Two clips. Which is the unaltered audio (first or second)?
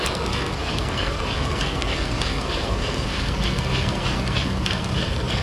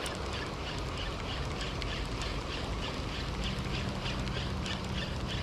second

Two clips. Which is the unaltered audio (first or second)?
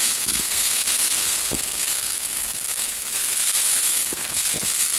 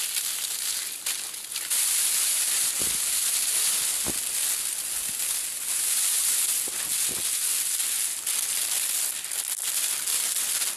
second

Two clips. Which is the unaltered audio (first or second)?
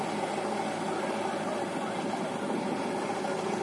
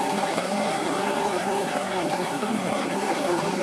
first